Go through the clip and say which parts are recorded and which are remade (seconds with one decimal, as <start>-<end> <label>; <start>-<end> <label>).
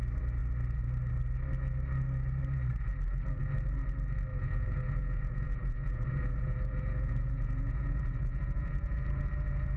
0.0-4.3 recorded; 4.3-9.8 remade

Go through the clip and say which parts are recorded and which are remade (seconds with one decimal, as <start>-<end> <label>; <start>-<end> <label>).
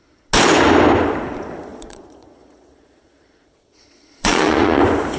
0.0-1.7 recorded; 1.7-4.8 remade; 4.8-5.2 recorded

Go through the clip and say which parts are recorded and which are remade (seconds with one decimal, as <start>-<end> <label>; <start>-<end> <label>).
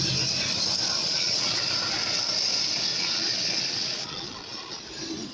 0.0-1.0 recorded; 1.0-1.6 remade; 1.6-2.9 recorded; 2.9-4.8 remade; 4.8-5.3 recorded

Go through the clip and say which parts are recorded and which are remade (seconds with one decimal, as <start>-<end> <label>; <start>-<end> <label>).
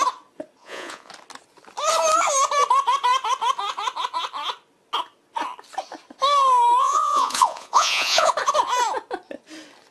0.0-0.6 recorded; 0.6-1.1 remade; 1.1-6.8 recorded; 6.8-8.3 remade; 8.3-9.9 recorded